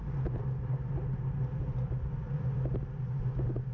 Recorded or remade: recorded